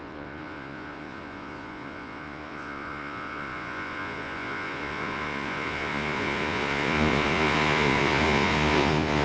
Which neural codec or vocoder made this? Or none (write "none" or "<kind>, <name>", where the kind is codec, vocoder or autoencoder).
vocoder, Vocos